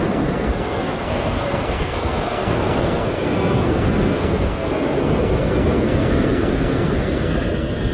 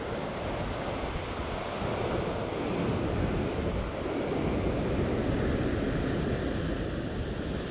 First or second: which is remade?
first